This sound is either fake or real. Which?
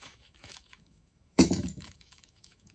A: fake